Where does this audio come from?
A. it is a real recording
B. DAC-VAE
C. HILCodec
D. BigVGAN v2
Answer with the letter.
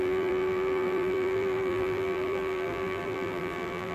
D